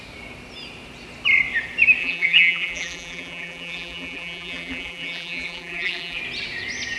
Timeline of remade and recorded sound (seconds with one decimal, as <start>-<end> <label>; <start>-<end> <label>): 0.0-2.0 recorded; 2.0-6.2 remade; 6.2-7.0 recorded